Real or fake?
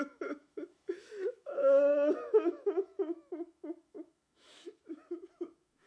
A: fake